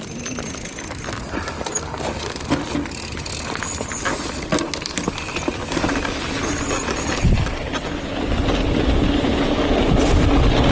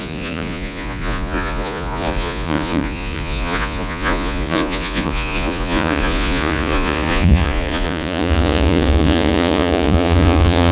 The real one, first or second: first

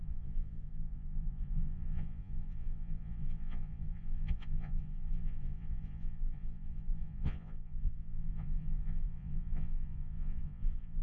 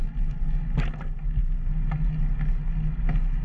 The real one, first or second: second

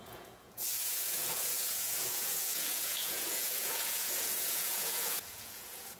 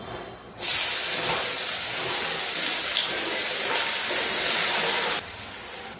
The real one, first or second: second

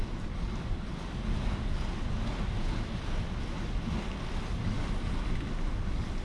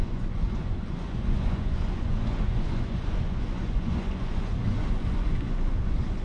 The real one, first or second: first